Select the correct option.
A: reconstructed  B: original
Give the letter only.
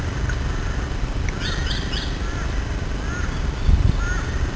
B